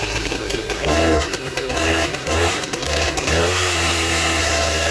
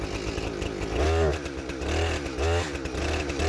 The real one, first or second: second